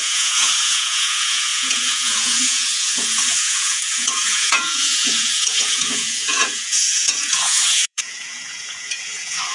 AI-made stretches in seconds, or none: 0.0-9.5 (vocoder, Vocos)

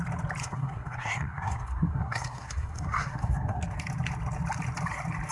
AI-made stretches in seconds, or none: 0.4-3.6 (codec, SNAC)

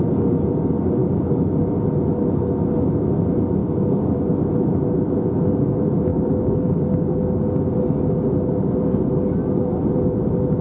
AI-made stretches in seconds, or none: 1.0-1.7 (codec, DAC); 3.6-4.2; 6.1-7.4

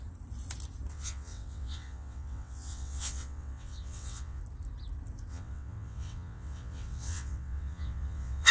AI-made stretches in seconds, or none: 0.9-4.4 (vocoder, WaveNeXt); 5.3-8.5

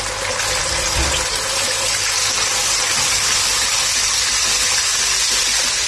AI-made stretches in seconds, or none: none

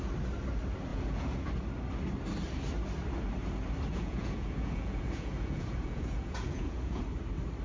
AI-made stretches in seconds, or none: 0.9-1.5 (vocoder, Vocos); 3.9-7.0